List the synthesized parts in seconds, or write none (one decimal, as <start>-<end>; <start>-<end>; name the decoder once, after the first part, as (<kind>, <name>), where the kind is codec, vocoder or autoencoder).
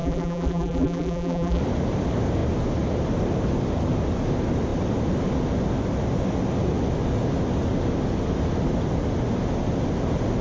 0.0-1.6 (vocoder, BigVGAN v2)